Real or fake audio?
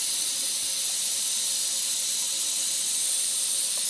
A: real